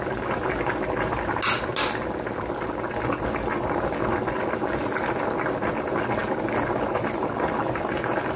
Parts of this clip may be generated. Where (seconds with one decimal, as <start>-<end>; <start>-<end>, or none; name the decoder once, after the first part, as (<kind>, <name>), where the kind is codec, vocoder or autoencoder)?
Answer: none